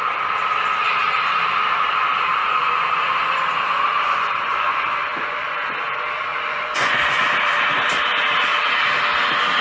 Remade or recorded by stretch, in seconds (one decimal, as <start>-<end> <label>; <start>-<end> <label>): 0.0-2.4 recorded; 2.4-5.8 remade; 5.8-6.3 recorded; 6.3-7.2 remade; 7.2-9.6 recorded